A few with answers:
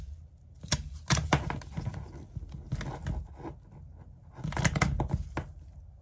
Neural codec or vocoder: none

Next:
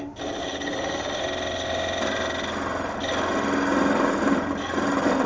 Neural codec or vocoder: none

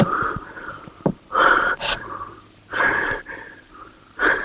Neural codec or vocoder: vocoder, BigVGAN v2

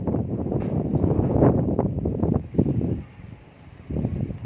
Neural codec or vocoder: vocoder, BigVGAN v2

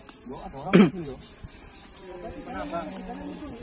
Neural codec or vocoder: vocoder, BigVGAN v2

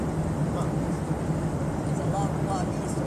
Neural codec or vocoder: vocoder, BigVGAN v2